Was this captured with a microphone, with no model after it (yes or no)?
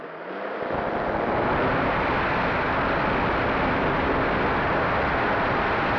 yes